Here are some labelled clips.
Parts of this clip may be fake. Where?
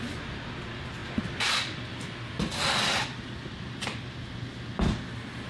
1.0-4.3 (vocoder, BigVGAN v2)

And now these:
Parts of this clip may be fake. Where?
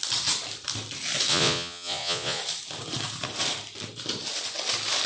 1.3-2.4 (vocoder, Vocos)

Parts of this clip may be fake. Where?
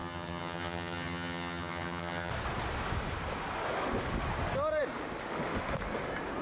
0.0-2.3 (vocoder, HiFi-GAN)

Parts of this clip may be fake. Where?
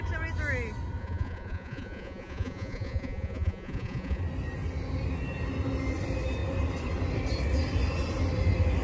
1.0-4.2 (vocoder, Vocos)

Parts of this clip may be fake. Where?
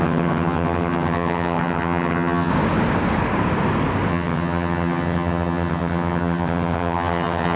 0.0-2.5 (vocoder, HiFi-GAN); 4.1-7.6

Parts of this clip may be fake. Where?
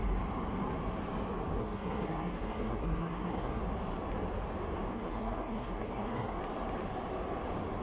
1.6-3.6 (codec, SNAC); 4.9-6.4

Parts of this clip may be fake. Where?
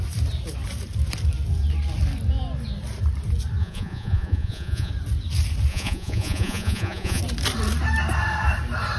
3.6-4.9 (vocoder, Vocos); 5.7-7.2